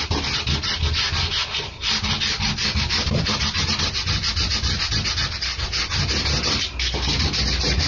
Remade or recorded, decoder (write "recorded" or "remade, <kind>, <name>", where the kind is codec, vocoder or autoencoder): recorded